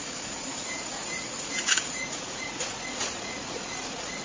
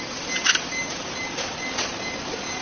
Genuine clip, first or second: second